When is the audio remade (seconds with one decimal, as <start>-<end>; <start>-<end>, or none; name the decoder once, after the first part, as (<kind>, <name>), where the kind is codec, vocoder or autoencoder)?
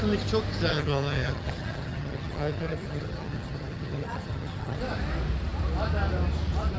0.7-4.8 (vocoder, HiFi-GAN)